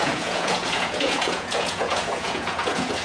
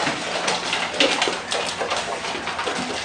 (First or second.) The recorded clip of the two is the second